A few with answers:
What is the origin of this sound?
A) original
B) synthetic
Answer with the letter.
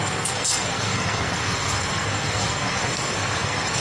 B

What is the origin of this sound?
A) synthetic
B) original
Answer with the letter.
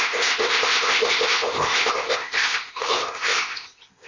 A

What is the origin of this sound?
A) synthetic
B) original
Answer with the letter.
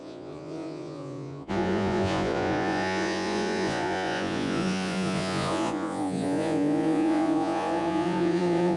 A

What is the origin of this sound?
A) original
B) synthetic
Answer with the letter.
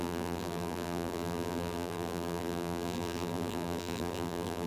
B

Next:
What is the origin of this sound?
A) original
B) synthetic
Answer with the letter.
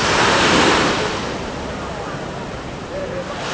B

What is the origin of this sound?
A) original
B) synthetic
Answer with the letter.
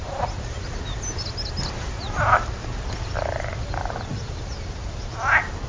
A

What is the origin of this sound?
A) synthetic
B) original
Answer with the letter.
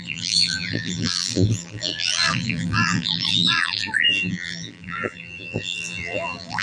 A